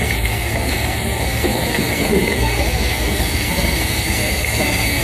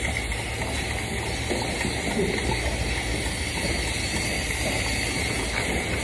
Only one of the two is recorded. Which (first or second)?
second